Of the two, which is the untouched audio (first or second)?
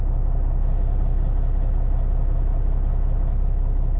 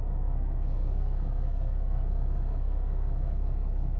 first